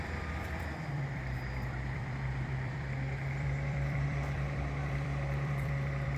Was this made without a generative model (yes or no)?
no